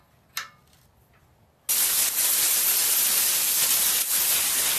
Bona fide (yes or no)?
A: yes